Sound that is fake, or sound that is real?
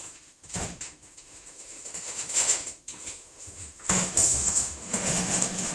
fake